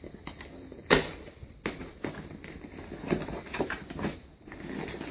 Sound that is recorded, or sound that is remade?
recorded